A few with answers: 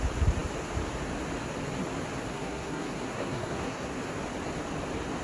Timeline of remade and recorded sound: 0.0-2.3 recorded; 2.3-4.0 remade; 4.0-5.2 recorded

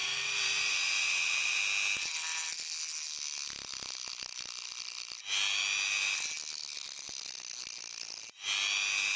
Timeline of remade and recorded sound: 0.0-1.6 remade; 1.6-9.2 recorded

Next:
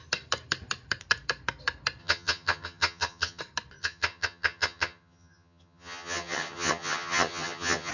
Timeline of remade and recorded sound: 0.0-2.0 recorded; 2.0-3.4 remade; 3.4-3.8 recorded; 3.8-7.9 remade

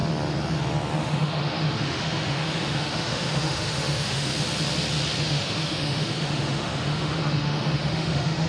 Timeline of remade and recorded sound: 0.0-1.0 recorded; 1.0-4.3 remade; 4.3-5.2 recorded; 5.2-8.5 remade

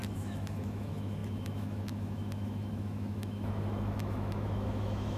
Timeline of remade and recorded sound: 0.0-5.2 remade

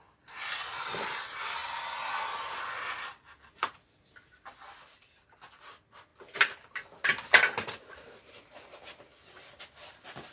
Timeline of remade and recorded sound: 0.0-10.3 recorded

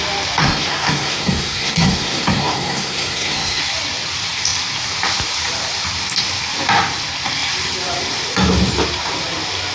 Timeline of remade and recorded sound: 0.0-0.4 recorded; 0.4-3.6 remade; 3.6-9.7 recorded

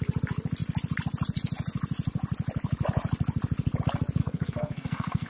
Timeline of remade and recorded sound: 0.0-4.2 recorded; 4.2-5.3 remade